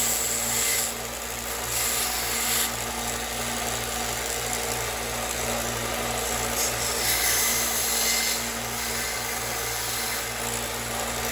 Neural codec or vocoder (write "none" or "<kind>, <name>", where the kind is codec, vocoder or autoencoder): none